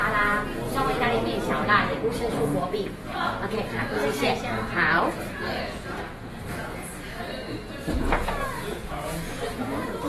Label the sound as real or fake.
fake